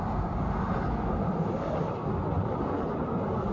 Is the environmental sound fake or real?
real